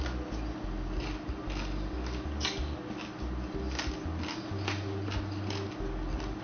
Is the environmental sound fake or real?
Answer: real